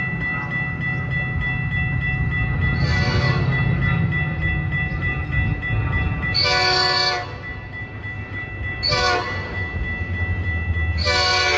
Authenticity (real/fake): real